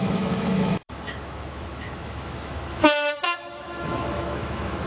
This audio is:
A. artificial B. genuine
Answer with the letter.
A